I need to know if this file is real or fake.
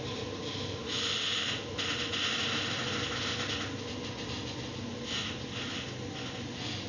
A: real